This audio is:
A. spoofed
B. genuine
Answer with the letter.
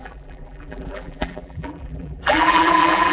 A